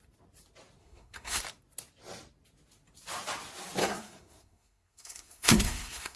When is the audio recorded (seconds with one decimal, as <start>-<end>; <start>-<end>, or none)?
0.0-0.8; 1.4-3.8

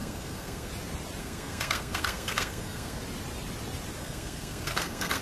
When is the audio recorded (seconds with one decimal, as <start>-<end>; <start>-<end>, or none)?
0.7-1.2; 3.0-4.0

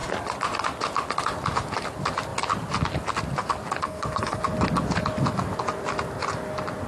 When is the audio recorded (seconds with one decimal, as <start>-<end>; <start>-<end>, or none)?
0.0-3.8; 4.4-6.9

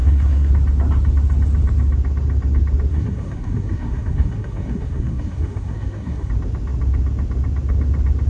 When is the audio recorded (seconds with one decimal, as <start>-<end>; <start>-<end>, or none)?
0.5-2.9; 6.3-8.3

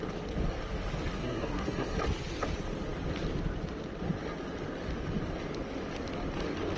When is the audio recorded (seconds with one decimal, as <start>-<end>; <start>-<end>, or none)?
0.0-1.2; 2.0-6.8

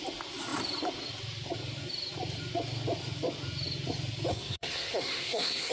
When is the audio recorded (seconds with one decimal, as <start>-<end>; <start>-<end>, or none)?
0.0-4.3